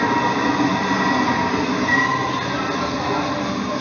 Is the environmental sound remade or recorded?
recorded